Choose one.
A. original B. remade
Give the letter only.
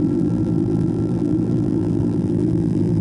B